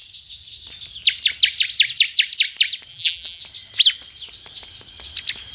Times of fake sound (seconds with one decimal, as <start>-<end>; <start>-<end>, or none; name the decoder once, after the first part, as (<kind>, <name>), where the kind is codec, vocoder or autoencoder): 2.9-3.4 (vocoder, BigVGAN v2)